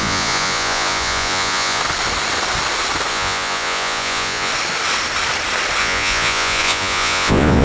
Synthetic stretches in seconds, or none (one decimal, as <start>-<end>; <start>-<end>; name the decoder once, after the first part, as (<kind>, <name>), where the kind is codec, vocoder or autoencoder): 0.0-1.8 (vocoder, Vocos); 3.1-4.5; 5.8-7.6